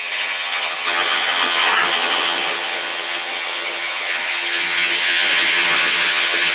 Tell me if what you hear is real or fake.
fake